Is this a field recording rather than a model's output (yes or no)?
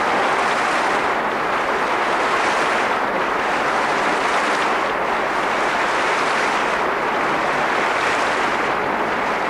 yes